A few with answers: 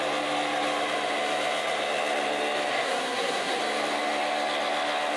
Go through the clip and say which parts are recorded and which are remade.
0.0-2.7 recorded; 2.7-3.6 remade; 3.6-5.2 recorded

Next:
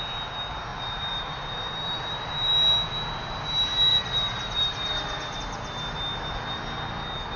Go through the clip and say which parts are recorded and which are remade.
0.0-0.7 recorded; 0.7-2.5 remade; 2.5-3.9 recorded; 3.9-5.4 remade; 5.4-7.4 recorded